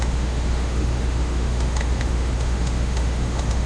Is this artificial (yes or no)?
yes